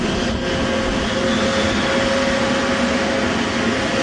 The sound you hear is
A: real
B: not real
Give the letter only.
A